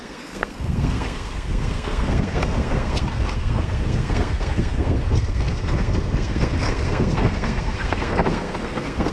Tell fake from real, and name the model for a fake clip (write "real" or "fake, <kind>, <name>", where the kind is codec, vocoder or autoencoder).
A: fake, codec, SNAC